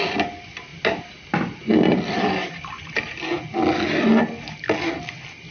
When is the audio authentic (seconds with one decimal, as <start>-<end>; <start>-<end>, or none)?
0.0-5.5